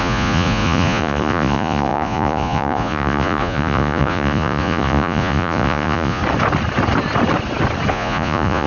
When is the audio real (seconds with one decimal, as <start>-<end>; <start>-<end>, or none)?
6.2-7.9